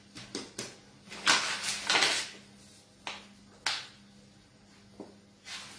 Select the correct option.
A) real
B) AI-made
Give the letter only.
A